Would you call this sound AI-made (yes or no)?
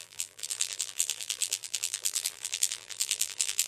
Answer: yes